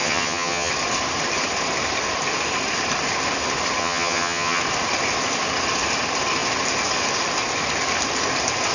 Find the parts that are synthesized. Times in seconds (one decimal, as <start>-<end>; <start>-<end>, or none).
0.0-0.7; 3.8-4.6